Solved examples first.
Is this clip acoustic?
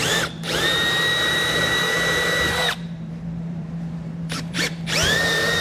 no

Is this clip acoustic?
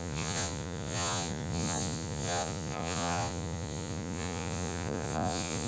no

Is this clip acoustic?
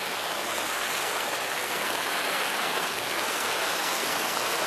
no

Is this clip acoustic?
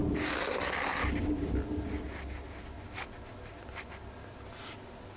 yes